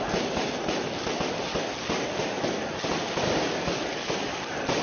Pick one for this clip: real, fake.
real